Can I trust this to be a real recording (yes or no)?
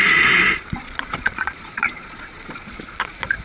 no